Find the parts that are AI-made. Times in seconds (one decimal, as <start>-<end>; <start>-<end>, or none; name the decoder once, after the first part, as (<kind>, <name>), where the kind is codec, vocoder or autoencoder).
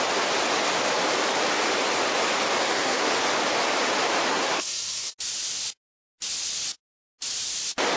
2.6-3.1 (codec, SNAC); 4.3-5.1